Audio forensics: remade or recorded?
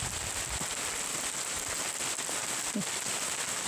recorded